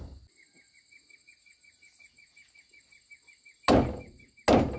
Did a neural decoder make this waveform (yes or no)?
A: no